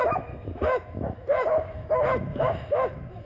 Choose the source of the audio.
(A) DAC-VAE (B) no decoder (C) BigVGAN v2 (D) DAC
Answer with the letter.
A